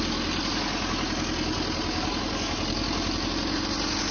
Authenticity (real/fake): real